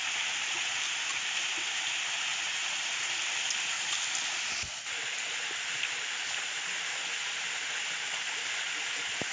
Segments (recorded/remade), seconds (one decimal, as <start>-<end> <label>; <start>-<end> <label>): 0.0-2.3 recorded; 2.3-2.9 remade; 2.9-9.3 recorded